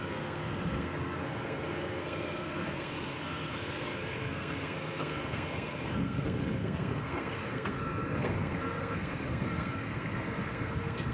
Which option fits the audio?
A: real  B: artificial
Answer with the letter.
B